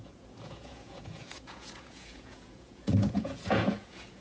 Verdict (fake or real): fake